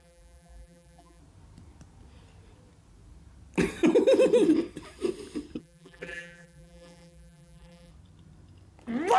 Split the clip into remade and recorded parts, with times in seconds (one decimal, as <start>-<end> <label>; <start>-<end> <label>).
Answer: 0.0-1.2 remade; 1.2-5.6 recorded; 5.6-7.9 remade; 7.9-9.2 recorded